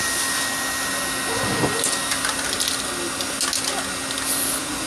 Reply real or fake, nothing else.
real